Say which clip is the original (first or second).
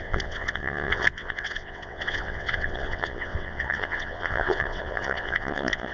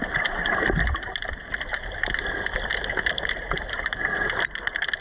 second